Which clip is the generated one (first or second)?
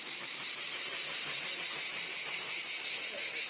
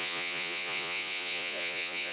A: second